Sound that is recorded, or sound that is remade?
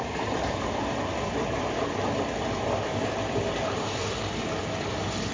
remade